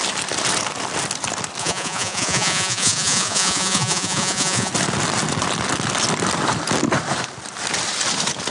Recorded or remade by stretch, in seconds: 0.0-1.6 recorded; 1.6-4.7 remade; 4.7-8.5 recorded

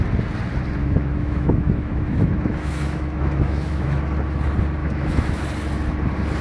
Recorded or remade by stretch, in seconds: 0.0-0.8 recorded; 0.8-4.0 remade; 4.0-4.8 recorded; 4.8-5.4 remade; 5.4-6.4 recorded

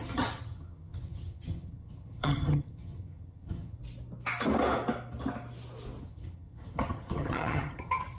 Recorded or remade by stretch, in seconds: 0.0-3.8 remade; 3.8-6.0 recorded; 6.0-8.2 remade

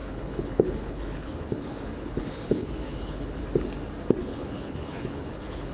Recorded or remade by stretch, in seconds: 0.0-3.4 remade; 3.4-4.2 recorded; 4.2-5.7 remade

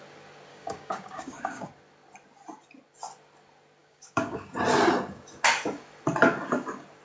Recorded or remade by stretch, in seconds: 0.0-0.5 recorded; 0.5-1.7 remade; 1.7-3.8 recorded; 3.8-4.5 remade; 4.5-7.0 recorded

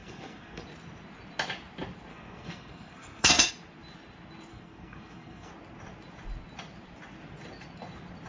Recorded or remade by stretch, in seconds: 0.0-0.6 remade; 0.6-2.1 recorded; 2.1-3.5 remade; 3.5-4.5 recorded; 4.5-5.5 remade; 5.5-8.3 recorded

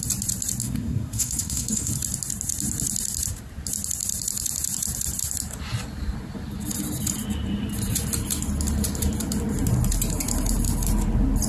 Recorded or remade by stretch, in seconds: 0.0-0.6 recorded; 0.6-1.9 remade; 1.9-11.5 recorded